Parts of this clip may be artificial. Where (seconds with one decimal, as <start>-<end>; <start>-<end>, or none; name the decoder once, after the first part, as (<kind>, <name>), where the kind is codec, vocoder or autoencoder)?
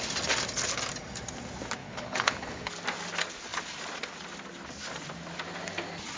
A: 1.8-2.7 (codec, HILCodec)